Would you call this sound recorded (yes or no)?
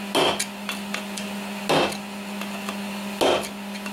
yes